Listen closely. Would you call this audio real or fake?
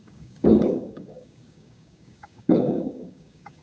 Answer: fake